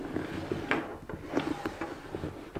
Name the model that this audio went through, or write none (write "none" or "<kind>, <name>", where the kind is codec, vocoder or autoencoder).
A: none